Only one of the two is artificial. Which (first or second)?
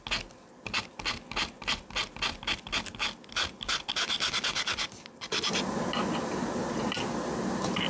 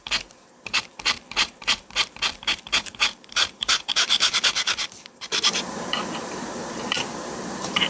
second